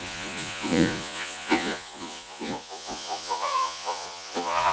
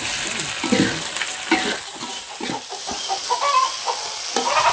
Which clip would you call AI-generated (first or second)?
first